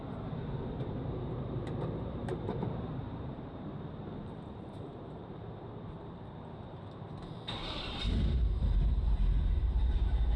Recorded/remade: remade